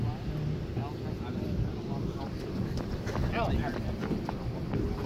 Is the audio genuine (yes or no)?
yes